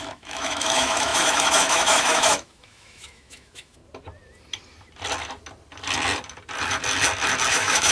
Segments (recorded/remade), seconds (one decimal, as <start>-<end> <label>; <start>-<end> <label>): 0.0-3.8 remade; 3.8-7.5 recorded; 7.5-7.9 remade

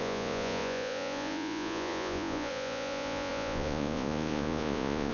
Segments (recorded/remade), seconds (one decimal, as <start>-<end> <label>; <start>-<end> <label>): 0.0-5.1 remade

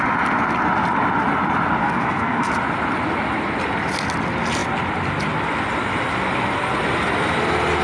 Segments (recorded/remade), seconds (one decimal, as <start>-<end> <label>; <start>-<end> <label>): 0.0-1.8 recorded; 1.8-2.5 remade; 2.5-7.8 recorded